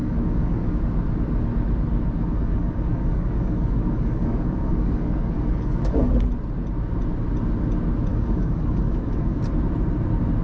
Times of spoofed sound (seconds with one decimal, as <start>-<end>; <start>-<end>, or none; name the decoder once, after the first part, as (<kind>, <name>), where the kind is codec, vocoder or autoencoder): 0.0-0.8 (codec, DAC); 2.2-6.1; 8.1-9.4